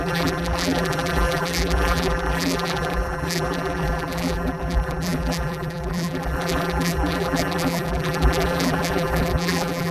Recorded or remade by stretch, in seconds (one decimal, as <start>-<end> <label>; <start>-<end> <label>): 0.0-9.9 remade